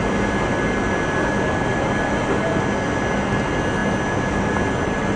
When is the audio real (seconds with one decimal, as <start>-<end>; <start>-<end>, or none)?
0.0-5.2